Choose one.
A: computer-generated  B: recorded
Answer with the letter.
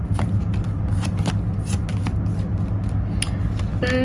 B